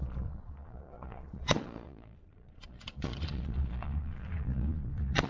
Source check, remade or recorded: remade